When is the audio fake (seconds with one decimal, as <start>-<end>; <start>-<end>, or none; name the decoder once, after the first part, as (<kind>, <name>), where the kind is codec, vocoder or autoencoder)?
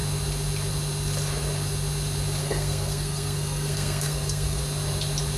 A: 2.4-4.6 (codec, SNAC)